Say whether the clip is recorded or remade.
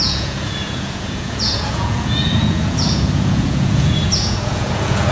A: remade